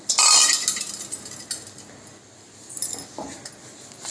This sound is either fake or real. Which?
real